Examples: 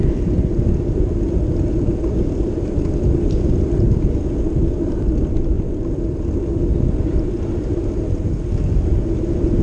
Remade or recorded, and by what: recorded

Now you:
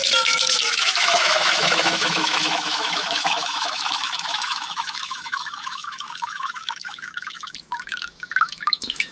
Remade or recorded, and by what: remade, autoencoder, DAC-VAE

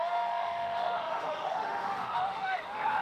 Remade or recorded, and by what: remade, autoencoder, DAC-VAE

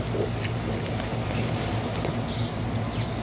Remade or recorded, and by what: recorded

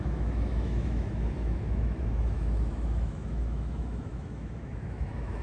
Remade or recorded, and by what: remade, autoencoder, DAC-VAE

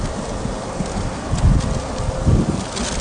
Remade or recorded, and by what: recorded